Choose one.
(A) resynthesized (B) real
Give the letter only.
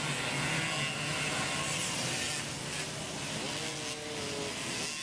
B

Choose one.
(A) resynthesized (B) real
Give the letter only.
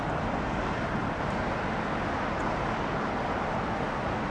B